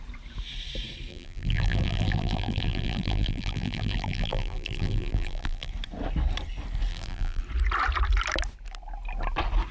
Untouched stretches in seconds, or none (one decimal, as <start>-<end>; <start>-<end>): 0.0-1.1; 5.7-6.9; 7.4-9.7